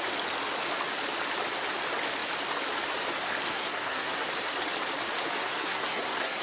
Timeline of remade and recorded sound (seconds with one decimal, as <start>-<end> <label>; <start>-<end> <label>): 0.0-3.5 recorded; 3.5-4.3 remade; 4.3-5.4 recorded; 5.4-6.4 remade